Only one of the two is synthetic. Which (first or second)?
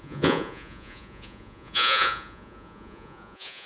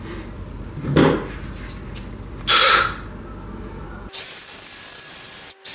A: first